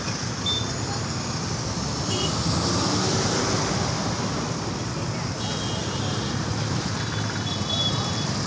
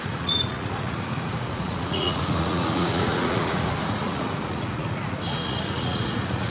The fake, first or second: second